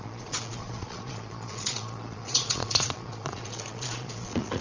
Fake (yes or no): yes